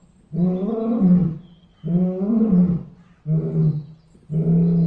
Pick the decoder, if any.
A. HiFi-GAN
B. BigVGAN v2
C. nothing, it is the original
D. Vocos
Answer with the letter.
C